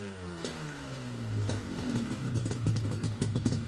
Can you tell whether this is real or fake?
fake